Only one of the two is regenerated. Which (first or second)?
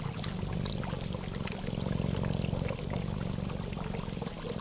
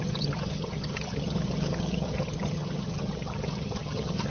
second